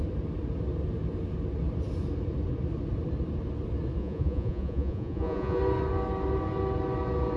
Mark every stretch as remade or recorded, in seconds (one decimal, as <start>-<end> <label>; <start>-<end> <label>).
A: 0.0-4.0 recorded; 4.0-5.6 remade; 5.6-7.4 recorded